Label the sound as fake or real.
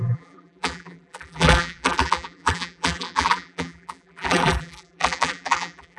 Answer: fake